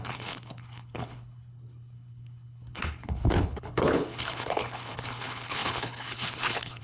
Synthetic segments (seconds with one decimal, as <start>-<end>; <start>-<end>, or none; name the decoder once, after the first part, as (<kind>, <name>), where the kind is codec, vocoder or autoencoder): 0.0-6.8 (codec, HILCodec)